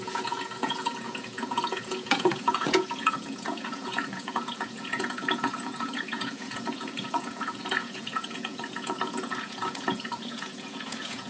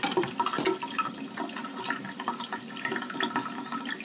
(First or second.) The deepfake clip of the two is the first